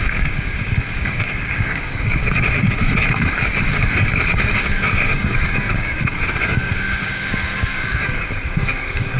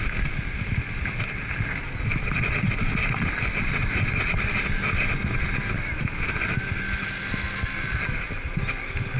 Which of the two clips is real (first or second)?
second